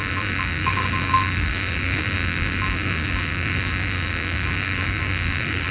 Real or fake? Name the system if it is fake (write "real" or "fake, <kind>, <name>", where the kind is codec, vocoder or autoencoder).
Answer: fake, codec, DAC